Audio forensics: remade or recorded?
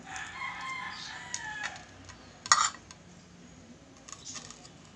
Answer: recorded